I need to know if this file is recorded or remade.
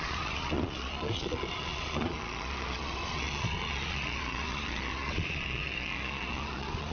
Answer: remade